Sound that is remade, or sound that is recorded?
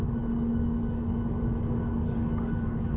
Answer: remade